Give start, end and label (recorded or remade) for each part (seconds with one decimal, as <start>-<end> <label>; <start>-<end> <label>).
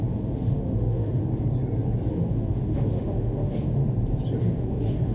0.0-1.2 remade; 1.2-2.1 recorded; 2.1-3.8 remade; 3.8-4.4 recorded; 4.4-5.1 remade